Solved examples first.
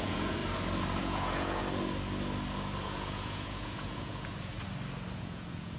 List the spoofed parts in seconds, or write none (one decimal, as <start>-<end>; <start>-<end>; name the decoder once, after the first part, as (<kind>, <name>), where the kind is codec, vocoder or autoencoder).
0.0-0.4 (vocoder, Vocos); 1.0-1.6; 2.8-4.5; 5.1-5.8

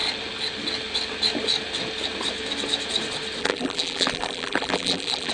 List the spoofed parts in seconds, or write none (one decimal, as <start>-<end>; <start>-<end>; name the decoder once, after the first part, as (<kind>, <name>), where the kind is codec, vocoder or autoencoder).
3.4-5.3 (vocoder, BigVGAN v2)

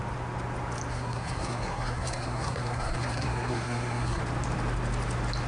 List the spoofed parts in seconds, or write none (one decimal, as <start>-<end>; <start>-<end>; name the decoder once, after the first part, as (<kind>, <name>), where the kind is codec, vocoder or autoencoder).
0.9-4.2 (codec, SNAC)